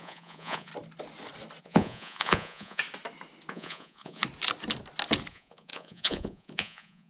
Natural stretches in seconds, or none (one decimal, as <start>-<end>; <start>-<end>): 0.7-1.6; 2.8-3.5; 4.2-5.3